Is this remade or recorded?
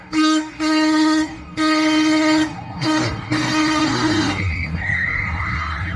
remade